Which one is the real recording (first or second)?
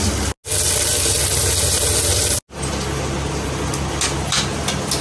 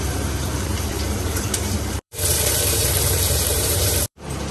first